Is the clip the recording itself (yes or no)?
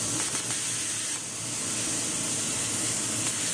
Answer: yes